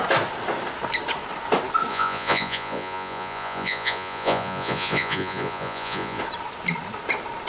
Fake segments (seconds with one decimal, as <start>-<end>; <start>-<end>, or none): 1.9-6.2